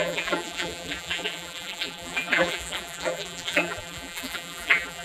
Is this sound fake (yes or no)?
yes